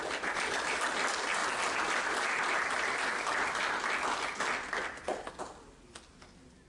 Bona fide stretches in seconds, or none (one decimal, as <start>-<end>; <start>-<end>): 0.0-6.7